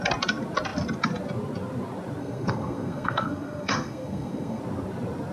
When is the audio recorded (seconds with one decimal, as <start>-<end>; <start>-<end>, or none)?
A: 0.0-2.2; 4.6-5.3